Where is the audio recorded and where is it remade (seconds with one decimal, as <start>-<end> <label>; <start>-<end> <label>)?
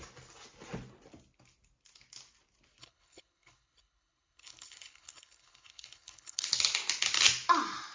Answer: 0.0-2.8 recorded; 2.8-6.5 remade; 6.5-7.9 recorded